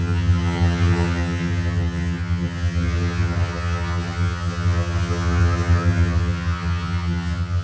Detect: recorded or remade remade